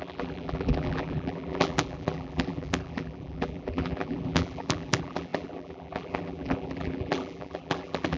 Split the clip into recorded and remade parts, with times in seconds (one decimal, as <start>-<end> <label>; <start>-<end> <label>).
0.0-8.2 remade